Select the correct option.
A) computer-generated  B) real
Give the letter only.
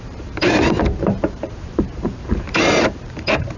A